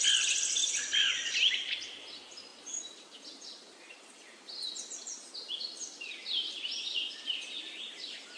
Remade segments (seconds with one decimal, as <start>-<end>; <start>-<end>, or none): 0.0-2.5; 3.0-8.4